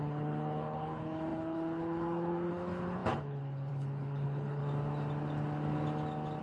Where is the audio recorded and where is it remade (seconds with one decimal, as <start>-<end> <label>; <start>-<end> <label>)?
0.0-4.6 remade; 4.6-6.4 recorded